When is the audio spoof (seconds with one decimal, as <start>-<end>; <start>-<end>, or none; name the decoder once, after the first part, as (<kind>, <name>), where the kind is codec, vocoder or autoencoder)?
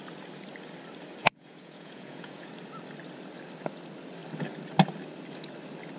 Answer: 1.2-2.5 (vocoder, Vocos)